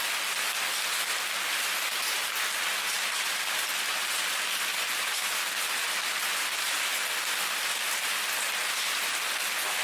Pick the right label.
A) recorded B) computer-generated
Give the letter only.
A